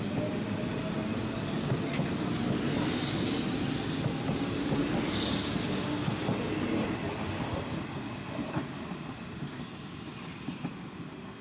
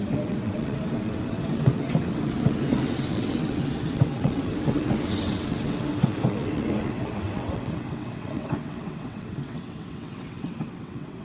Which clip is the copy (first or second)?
second